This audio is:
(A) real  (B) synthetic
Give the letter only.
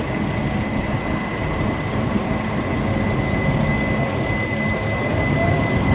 A